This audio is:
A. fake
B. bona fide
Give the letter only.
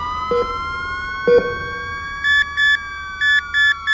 B